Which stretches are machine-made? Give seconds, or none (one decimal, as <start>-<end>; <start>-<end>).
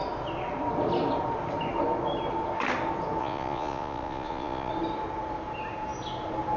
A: 3.2-4.7